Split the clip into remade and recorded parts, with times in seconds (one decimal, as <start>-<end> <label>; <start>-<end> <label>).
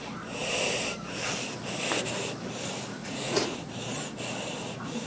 0.0-3.0 recorded; 3.0-3.7 remade; 3.7-5.1 recorded